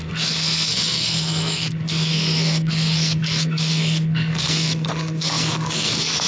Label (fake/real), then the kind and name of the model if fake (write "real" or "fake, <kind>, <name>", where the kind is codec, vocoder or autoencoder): fake, codec, SNAC